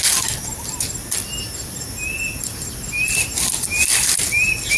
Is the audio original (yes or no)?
yes